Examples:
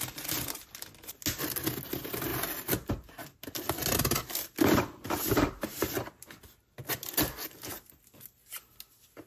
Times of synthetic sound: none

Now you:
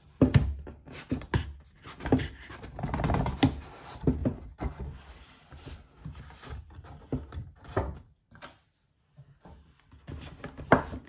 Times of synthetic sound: none